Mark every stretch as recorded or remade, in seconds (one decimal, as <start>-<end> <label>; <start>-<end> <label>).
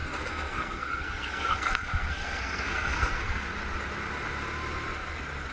0.0-3.5 remade; 3.5-5.5 recorded